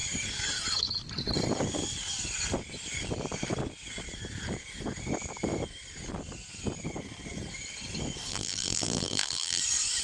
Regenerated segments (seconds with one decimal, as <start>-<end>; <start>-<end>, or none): 8.3-9.6